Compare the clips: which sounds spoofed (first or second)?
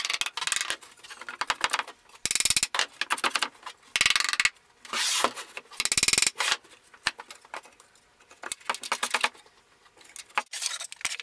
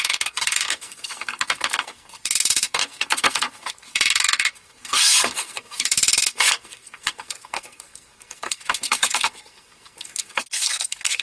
second